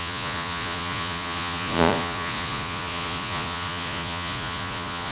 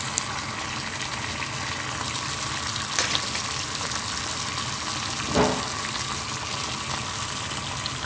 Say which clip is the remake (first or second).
first